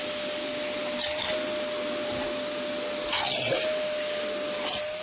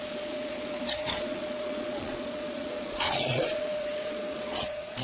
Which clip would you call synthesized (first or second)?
second